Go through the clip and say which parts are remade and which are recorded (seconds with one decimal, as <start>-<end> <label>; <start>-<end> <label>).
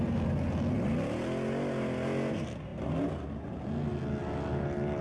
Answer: 0.0-5.0 recorded